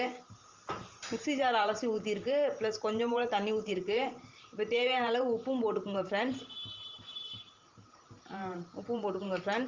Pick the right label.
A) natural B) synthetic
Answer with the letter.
B